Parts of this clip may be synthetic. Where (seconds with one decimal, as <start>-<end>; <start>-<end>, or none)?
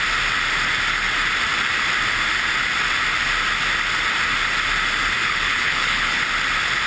5.2-6.2